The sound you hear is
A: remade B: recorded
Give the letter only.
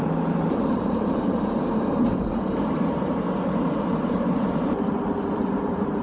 A